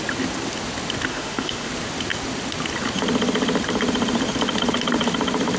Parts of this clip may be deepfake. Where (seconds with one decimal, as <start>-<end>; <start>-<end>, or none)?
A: 1.1-1.7